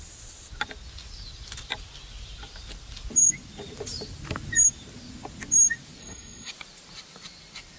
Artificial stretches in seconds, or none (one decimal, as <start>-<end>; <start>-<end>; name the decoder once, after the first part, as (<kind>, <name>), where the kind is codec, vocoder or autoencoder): 6.0-6.5 (codec, SNAC)